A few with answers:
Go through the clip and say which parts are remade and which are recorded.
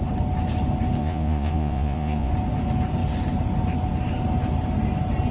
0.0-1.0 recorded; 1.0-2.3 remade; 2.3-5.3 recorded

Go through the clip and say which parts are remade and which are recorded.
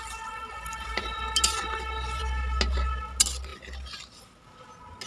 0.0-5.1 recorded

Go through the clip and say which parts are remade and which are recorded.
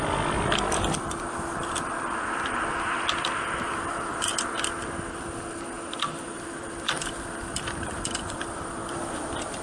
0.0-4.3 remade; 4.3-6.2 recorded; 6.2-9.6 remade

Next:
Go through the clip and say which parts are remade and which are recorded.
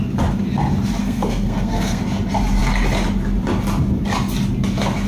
0.0-1.0 recorded; 1.0-2.0 remade; 2.0-5.1 recorded